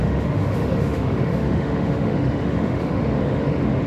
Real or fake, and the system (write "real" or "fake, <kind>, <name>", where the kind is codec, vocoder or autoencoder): fake, autoencoder, DAC-VAE